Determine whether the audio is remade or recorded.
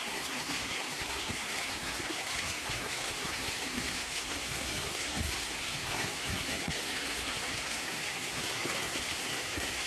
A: remade